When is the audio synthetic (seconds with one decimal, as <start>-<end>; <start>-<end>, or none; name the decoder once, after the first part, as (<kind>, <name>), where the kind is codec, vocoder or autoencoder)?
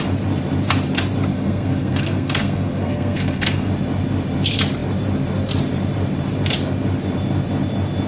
1.3-3.7 (codec, SNAC)